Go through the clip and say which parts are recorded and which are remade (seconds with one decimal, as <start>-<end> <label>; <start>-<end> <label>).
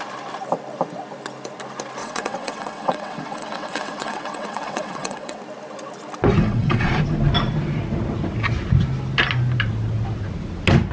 0.0-2.0 recorded; 2.0-5.4 remade; 5.4-6.4 recorded; 6.4-6.9 remade; 6.9-10.9 recorded